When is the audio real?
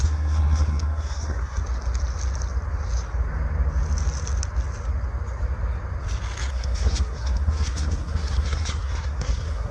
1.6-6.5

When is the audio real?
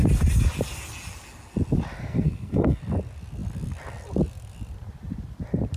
0.0-2.0; 2.8-5.8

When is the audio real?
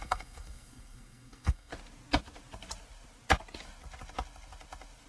1.7-5.1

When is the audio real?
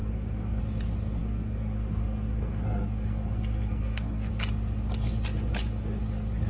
0.6-1.2; 4.3-6.5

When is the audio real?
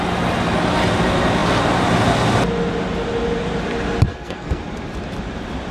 0.0-4.1; 4.6-5.7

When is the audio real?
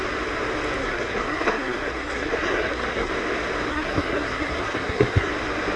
0.0-0.8; 3.1-3.7; 5.3-5.8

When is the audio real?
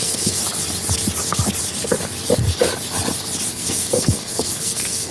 0.4-3.5